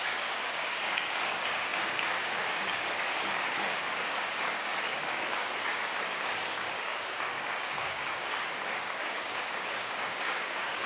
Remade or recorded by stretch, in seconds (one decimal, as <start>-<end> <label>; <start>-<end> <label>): 0.0-10.9 remade